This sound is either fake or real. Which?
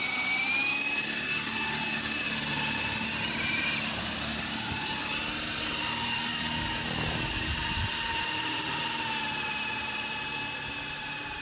real